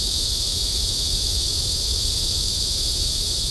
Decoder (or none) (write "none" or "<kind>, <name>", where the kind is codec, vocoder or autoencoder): autoencoder, DAC-VAE